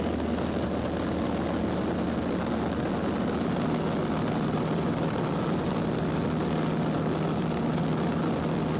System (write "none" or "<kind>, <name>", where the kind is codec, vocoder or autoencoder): none